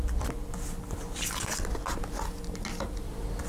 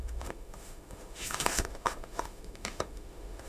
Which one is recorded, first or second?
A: first